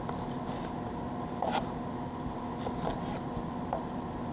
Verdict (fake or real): real